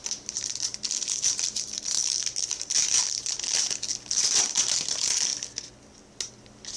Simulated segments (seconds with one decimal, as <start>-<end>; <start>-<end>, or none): none